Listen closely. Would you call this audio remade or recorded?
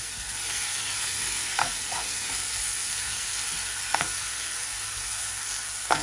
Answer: remade